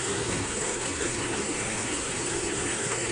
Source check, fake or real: fake